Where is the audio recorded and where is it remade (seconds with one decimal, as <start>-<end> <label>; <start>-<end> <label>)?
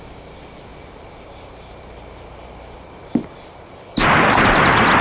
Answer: 0.0-0.7 recorded; 0.7-3.7 remade; 3.7-5.0 recorded